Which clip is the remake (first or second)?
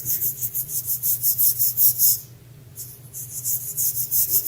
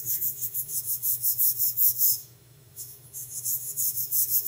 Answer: second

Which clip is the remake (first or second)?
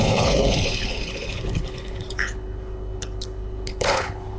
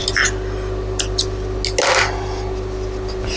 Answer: first